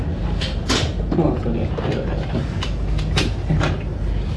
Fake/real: real